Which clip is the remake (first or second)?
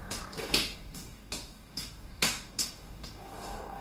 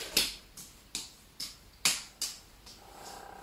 first